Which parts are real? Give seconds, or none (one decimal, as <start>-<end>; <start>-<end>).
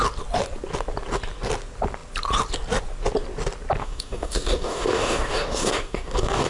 0.0-3.8